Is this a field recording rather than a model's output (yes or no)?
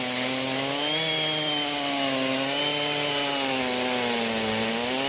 yes